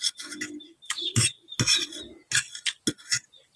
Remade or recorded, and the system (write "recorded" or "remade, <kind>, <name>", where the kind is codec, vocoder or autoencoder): recorded